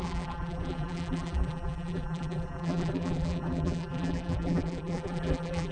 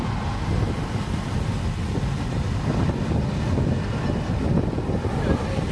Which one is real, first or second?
second